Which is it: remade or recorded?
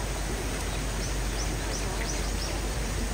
recorded